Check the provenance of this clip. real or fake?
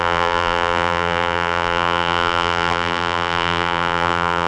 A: fake